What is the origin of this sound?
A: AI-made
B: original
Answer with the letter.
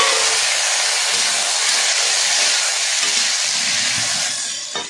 B